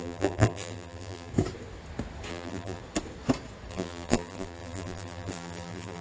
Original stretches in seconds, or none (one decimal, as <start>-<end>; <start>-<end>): 1.3-2.3; 2.8-3.7